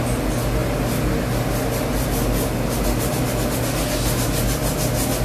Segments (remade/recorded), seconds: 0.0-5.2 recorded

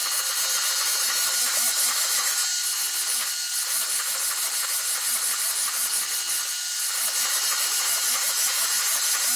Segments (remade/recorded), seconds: 0.0-0.8 recorded; 0.8-2.4 remade; 2.4-7.3 recorded; 7.3-9.4 remade

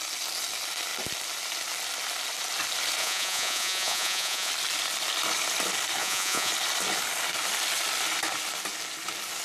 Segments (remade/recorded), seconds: 0.0-3.0 recorded; 3.0-4.5 remade; 4.5-6.0 recorded; 6.0-6.5 remade; 6.5-9.4 recorded

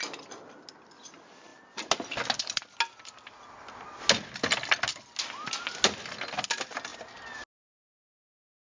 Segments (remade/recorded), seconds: 0.0-8.7 recorded

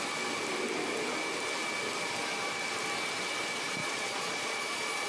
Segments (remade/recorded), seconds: 0.0-3.8 recorded; 3.8-5.1 remade

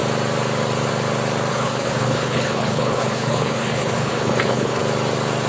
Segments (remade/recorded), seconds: 0.0-1.5 recorded; 1.5-4.8 remade; 4.8-5.5 recorded